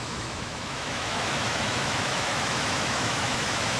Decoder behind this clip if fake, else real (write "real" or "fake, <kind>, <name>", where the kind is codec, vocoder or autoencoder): fake, autoencoder, DAC-VAE